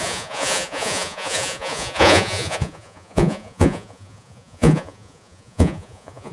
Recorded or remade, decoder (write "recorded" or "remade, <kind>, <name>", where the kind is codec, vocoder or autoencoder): remade, vocoder, Vocos